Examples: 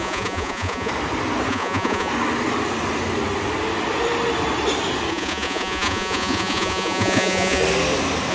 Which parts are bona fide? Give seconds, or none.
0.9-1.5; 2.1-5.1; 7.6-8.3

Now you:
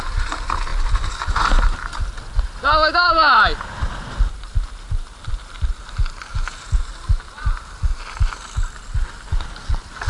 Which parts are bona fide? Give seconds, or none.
0.0-10.1